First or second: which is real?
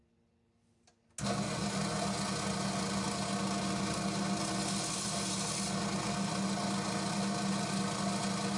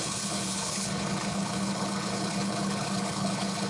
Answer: first